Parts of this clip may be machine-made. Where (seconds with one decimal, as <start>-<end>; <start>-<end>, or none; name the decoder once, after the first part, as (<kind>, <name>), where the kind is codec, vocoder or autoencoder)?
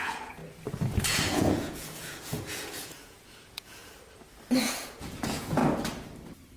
0.0-0.4 (vocoder, Vocos); 1.1-3.8; 4.6-5.6